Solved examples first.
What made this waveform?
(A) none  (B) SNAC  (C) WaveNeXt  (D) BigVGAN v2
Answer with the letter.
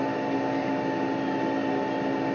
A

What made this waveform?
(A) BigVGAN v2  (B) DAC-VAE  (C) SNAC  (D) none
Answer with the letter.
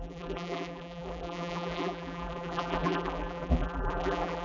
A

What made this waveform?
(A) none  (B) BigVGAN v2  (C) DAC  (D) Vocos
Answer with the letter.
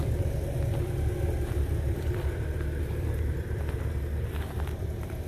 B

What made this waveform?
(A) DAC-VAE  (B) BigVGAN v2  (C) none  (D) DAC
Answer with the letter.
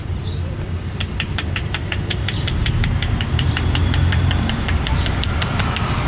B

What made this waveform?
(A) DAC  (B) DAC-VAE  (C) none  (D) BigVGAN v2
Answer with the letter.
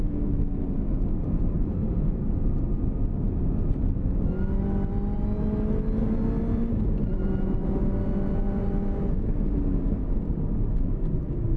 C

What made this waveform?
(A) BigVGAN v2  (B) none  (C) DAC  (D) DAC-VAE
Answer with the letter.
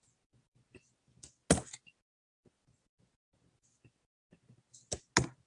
B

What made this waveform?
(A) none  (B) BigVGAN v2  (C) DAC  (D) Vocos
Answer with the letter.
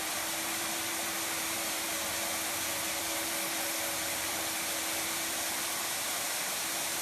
B